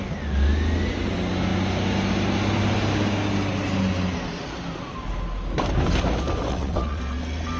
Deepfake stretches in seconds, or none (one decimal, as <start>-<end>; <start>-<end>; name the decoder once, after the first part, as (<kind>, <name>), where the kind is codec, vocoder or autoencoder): 6.5-7.0 (vocoder, WaveNeXt)